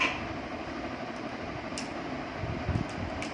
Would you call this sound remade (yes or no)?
no